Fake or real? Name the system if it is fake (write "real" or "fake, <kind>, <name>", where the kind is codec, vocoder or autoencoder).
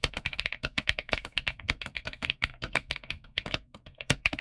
fake, codec, SNAC